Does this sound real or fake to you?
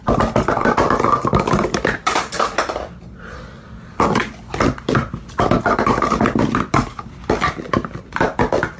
real